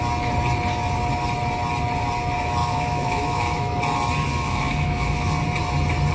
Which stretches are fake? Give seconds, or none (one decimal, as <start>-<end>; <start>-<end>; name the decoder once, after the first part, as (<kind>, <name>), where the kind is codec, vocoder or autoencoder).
2.6-3.8 (autoencoder, DAC-VAE); 4.3-5.3